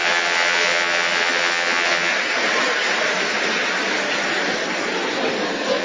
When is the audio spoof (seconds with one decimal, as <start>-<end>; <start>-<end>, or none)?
0.0-2.1